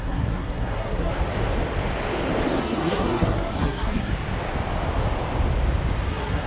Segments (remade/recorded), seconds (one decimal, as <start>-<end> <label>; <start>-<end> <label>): 0.0-1.1 remade; 1.1-2.6 recorded; 2.6-4.1 remade; 4.1-6.1 recorded; 6.1-6.5 remade